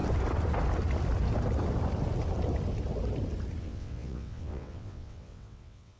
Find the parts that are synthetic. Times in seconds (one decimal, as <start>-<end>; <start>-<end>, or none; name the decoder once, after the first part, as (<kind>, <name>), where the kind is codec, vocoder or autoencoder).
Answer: 3.6-6.0 (vocoder, WaveNeXt)